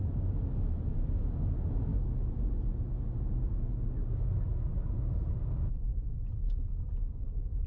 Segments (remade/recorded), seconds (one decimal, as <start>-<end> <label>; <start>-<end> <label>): 0.0-7.7 recorded